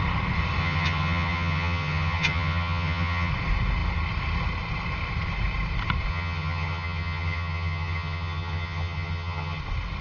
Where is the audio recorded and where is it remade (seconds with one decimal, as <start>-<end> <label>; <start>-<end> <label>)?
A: 0.0-0.6 recorded; 0.6-3.3 remade; 3.3-6.1 recorded; 6.1-9.6 remade; 9.6-10.0 recorded